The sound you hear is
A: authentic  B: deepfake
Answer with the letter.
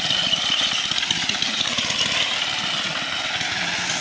A